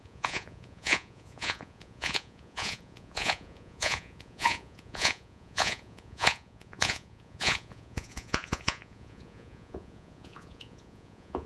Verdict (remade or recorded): remade